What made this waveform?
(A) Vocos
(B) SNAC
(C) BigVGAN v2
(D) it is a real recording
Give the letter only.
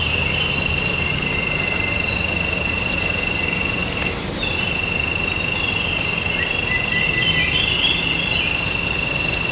D